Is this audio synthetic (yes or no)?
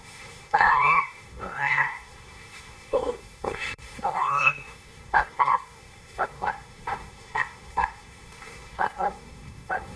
yes